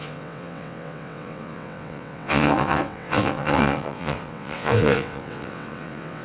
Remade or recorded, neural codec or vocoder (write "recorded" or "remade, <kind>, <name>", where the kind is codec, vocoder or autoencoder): remade, vocoder, WaveNeXt